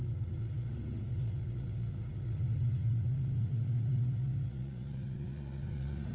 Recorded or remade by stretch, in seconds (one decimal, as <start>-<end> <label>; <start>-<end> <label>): 0.0-6.1 remade